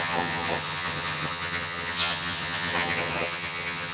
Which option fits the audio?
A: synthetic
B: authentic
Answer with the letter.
A